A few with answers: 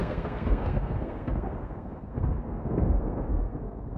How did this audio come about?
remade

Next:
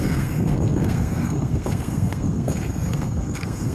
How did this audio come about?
remade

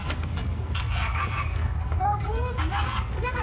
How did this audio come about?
remade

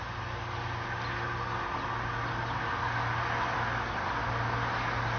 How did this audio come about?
recorded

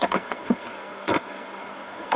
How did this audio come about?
remade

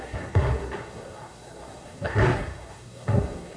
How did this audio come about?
remade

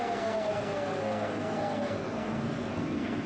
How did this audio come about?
remade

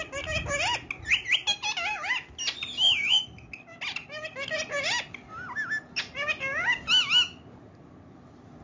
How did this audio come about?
recorded